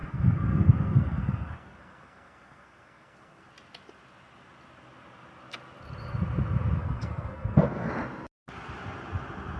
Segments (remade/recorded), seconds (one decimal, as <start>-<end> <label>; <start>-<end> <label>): 0.0-3.5 remade; 3.5-6.8 recorded; 6.8-7.9 remade; 7.9-9.6 recorded